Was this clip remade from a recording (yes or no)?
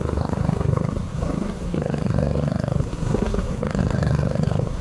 yes